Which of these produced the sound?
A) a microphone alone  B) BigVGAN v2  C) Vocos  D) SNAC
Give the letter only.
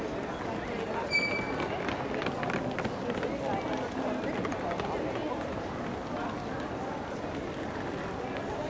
A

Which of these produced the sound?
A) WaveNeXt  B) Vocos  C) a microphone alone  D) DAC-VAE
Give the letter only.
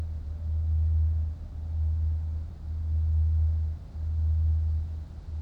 C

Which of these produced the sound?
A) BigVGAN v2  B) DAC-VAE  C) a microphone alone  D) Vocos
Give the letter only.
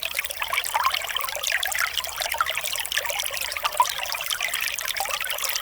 C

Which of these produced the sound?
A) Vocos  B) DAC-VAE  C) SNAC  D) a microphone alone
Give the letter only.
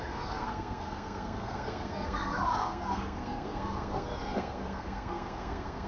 C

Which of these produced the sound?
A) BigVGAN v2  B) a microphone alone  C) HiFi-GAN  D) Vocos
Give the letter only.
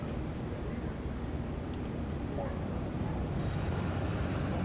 A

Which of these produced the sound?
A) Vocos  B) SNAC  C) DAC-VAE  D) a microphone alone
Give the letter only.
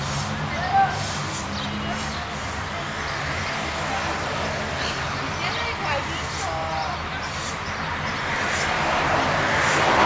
D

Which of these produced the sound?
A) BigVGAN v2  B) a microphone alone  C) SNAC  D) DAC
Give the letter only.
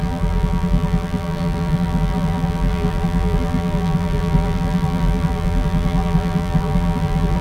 A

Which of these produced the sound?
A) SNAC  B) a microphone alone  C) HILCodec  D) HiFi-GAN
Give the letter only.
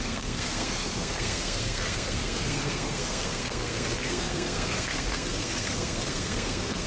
A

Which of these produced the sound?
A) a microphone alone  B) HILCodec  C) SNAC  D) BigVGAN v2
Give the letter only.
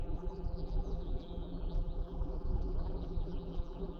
D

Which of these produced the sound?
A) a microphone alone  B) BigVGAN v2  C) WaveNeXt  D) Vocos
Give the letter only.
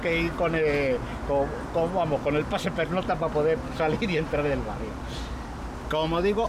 A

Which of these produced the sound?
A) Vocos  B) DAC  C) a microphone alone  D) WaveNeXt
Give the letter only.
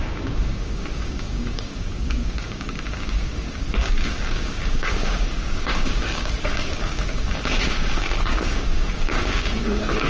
B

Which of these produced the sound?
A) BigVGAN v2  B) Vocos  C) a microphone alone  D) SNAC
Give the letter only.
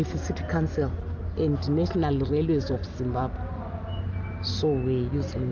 C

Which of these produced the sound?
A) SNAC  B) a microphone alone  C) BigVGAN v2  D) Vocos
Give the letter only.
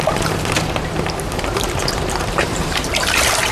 C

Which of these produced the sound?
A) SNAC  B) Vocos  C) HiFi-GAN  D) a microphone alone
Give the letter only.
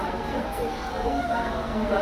A